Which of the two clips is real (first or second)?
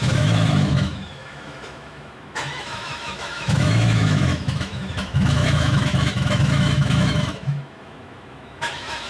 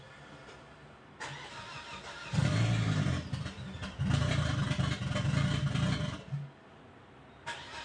second